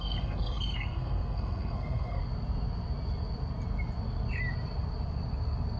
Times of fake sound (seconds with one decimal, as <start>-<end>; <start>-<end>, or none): 0.0-2.2